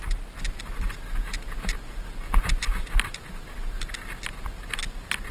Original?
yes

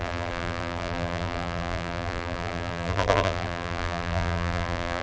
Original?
no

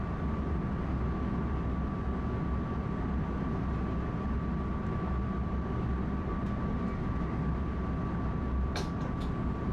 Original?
yes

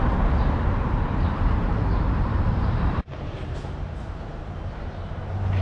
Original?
no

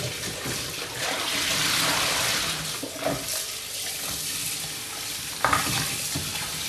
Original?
yes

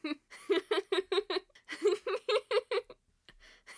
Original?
yes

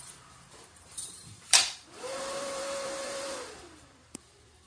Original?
no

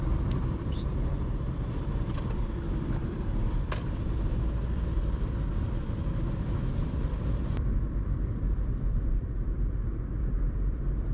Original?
no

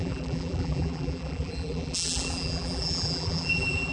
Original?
no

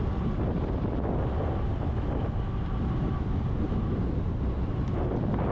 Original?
yes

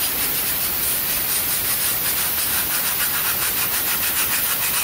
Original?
no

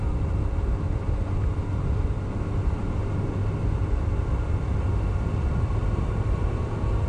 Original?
yes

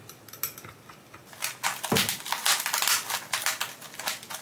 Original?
yes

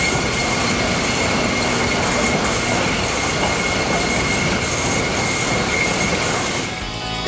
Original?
yes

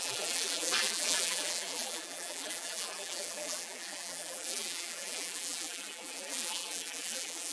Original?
no